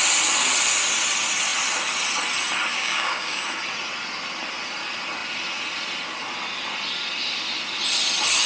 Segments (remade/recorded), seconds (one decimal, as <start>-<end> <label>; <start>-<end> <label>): 0.0-2.7 recorded; 2.7-3.4 remade; 3.4-8.5 recorded